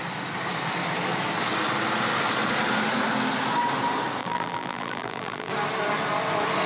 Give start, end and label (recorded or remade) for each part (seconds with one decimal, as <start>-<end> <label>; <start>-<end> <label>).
0.0-4.2 recorded; 4.2-5.5 remade; 5.5-6.7 recorded